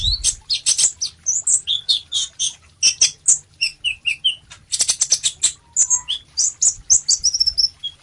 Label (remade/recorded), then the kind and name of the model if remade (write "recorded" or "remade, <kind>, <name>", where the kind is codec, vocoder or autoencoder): recorded